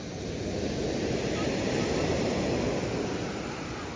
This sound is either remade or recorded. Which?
recorded